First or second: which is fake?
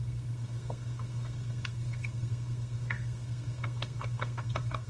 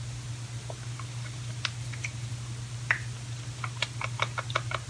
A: first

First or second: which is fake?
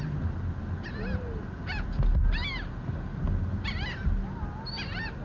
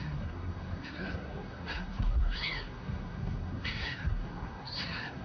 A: second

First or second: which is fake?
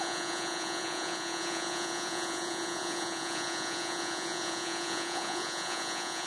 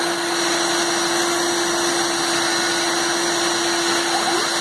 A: first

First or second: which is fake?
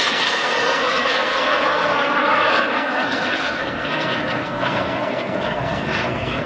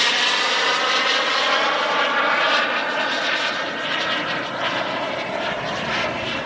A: first